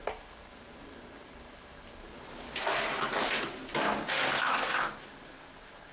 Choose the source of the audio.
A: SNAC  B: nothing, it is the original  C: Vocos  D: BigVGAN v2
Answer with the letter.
B